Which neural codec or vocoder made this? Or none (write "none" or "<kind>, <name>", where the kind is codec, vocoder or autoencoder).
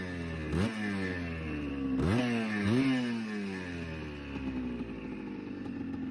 none